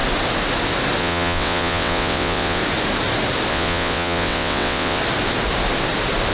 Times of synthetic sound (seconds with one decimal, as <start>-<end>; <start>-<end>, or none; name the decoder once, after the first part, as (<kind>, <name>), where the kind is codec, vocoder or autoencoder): 1.0-2.6 (vocoder, WaveNeXt); 3.5-5.0